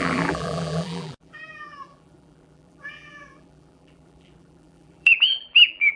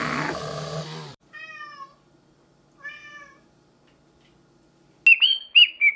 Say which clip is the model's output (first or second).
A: first